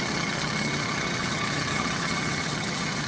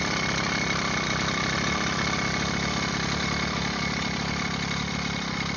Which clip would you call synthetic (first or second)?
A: first